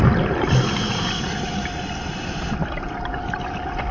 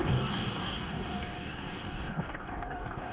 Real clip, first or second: first